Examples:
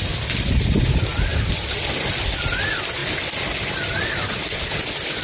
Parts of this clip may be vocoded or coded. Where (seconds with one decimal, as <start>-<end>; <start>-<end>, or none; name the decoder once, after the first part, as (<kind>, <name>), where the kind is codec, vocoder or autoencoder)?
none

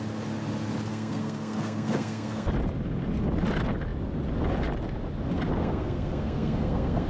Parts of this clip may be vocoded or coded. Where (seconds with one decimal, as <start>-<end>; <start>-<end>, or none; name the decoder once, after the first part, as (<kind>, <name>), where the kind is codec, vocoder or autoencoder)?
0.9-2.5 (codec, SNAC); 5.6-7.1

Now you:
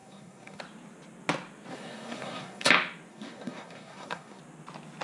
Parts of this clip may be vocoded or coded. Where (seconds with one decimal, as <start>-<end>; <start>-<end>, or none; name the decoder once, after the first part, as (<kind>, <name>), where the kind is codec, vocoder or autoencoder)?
0.0-0.6 (codec, SNAC); 1.7-2.7; 3.1-4.4

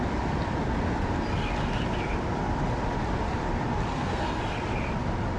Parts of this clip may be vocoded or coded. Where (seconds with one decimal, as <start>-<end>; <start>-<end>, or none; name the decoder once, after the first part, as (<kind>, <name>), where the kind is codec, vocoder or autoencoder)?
3.9-4.4 (codec, SNAC)

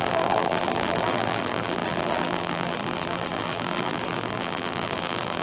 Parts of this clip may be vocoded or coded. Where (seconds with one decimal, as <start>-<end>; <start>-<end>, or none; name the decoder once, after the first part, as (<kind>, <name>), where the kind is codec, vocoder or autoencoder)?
0.0-5.4 (vocoder, BigVGAN v2)

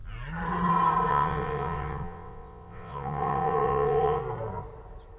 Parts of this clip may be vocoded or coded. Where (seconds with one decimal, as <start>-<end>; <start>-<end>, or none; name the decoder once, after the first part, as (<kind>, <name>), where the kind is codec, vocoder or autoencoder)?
1.1-4.2 (vocoder, WaveNeXt)

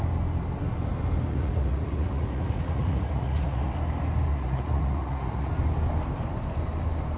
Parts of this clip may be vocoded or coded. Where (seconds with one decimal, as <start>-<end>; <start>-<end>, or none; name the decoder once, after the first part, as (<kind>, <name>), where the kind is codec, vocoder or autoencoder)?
1.3-3.8 (vocoder, Vocos); 4.3-5.5